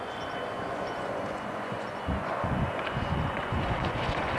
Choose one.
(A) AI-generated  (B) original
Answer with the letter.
A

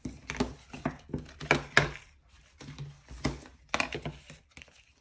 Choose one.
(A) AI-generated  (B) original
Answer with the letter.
B